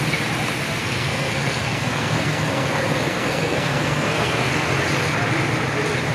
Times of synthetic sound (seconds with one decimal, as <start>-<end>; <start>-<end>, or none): 0.8-4.5